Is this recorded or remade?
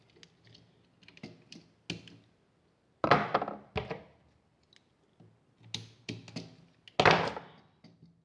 recorded